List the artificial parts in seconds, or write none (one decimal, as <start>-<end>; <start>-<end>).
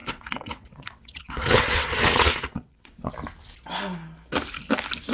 0.0-3.1